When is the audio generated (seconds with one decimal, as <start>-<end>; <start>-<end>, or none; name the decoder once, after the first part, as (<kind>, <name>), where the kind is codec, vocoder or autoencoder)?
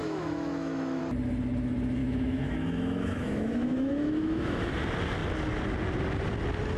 0.0-1.0 (autoencoder, DAC-VAE); 2.0-4.7